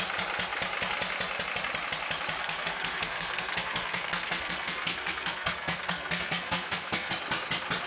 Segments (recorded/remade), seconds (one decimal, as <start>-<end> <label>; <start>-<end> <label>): 0.0-2.4 recorded; 2.4-7.1 remade; 7.1-7.9 recorded